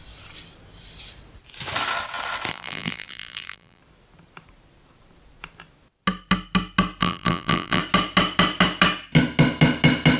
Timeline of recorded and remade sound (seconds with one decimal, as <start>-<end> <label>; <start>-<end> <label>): 0.0-2.5 recorded; 2.5-3.8 remade; 3.8-7.0 recorded; 7.0-7.8 remade; 7.8-10.2 recorded